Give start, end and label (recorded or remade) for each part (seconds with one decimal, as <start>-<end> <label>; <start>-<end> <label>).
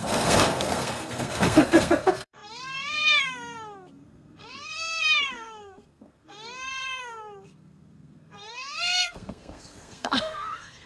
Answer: 0.0-10.9 remade